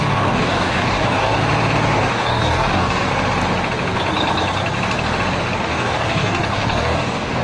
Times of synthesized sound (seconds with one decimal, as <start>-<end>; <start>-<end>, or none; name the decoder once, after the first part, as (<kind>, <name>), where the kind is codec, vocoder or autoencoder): 0.0-1.4 (codec, DAC); 2.1-3.1; 5.6-7.4